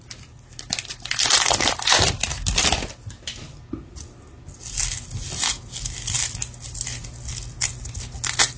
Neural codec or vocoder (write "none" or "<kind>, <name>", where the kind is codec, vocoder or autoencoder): none